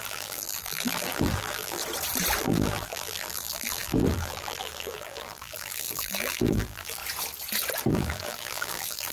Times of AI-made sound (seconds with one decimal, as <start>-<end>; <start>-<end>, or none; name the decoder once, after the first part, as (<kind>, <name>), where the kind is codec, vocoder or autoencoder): 0.0-1.8 (vocoder, BigVGAN v2); 2.4-7.0; 7.9-9.1